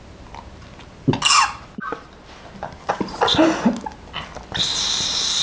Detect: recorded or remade recorded